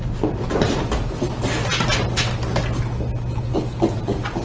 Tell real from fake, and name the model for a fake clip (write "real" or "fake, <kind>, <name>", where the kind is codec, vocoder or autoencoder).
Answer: real